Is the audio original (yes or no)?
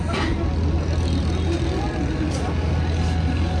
yes